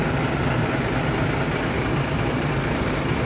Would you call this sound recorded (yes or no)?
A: yes